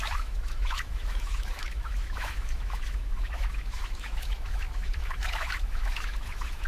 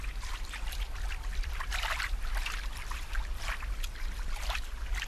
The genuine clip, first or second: second